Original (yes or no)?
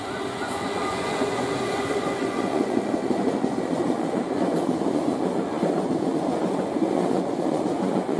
no